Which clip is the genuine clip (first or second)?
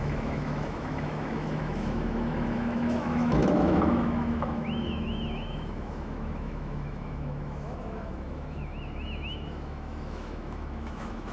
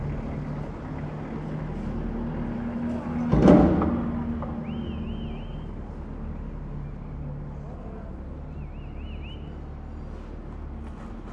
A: second